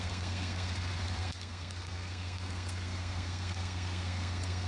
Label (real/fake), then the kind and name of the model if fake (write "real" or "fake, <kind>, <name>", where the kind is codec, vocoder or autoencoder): fake, codec, SNAC